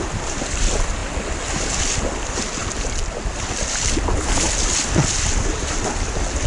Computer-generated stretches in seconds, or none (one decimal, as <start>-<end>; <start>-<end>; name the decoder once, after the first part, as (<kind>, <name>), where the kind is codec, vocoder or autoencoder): none